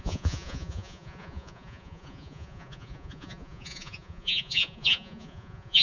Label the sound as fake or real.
fake